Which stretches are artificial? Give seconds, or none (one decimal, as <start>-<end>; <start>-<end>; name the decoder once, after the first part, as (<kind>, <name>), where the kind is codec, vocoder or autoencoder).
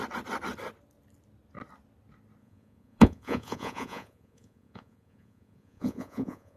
2.4-6.6 (vocoder, Vocos)